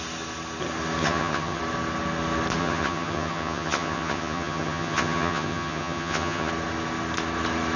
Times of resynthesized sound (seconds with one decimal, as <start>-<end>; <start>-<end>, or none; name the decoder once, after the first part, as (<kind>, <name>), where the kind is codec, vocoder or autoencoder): 1.0-1.6 (vocoder, HiFi-GAN); 2.6-6.5

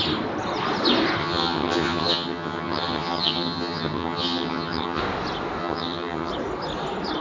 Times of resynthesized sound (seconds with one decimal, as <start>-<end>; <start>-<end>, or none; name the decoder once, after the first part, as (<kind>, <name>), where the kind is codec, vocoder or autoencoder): 1.2-5.0 (vocoder, HiFi-GAN); 5.6-6.3

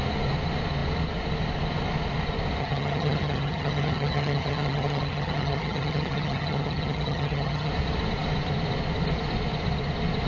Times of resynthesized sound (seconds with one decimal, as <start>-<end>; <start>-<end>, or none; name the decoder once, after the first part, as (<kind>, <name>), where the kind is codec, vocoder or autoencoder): 2.6-7.7 (vocoder, HiFi-GAN)

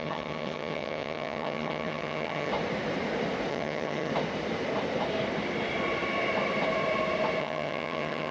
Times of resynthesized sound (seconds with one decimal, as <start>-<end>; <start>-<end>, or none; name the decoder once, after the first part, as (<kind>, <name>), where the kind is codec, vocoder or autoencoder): 0.0-2.5 (vocoder, HiFi-GAN); 3.5-4.1; 7.4-8.3

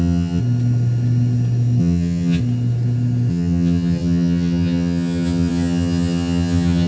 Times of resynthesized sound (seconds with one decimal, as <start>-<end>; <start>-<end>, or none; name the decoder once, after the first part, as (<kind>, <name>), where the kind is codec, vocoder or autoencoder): 0.0-0.4 (vocoder, HiFi-GAN); 1.8-2.4; 3.3-6.9

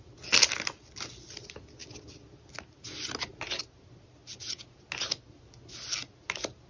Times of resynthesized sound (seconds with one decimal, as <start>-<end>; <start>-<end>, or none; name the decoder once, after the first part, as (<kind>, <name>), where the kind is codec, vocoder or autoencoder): none

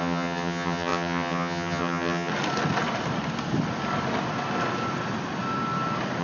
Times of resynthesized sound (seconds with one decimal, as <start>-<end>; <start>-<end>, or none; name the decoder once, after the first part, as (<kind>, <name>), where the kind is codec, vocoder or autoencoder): 0.0-2.3 (vocoder, HiFi-GAN)

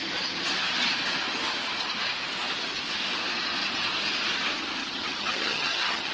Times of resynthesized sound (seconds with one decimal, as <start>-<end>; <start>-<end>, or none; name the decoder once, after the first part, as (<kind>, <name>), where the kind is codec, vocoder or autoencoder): 4.8-6.1 (vocoder, HiFi-GAN)